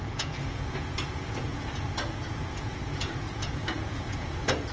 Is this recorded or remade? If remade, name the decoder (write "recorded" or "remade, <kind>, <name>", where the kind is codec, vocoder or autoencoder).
remade, vocoder, Vocos